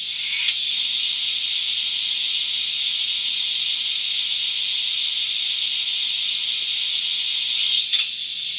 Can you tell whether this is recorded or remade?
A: recorded